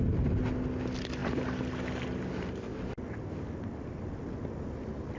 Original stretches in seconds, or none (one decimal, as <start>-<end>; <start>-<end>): 0.0-5.2